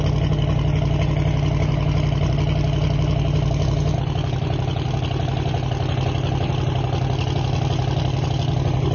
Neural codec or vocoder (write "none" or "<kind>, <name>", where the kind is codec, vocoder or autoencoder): none